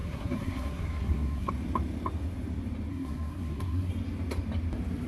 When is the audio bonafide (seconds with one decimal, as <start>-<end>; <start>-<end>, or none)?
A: 1.5-2.9; 3.9-5.1